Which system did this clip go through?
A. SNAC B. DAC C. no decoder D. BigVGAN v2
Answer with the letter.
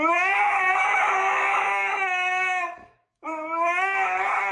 B